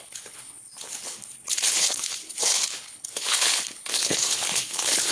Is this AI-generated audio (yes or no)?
yes